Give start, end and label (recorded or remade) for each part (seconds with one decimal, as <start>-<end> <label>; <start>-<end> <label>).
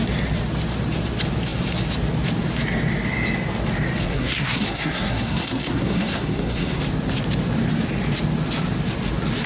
0.0-4.0 recorded; 4.0-6.8 remade; 6.8-9.5 recorded